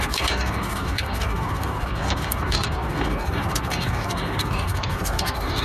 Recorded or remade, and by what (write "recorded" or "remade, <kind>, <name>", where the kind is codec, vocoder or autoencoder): remade, codec, DAC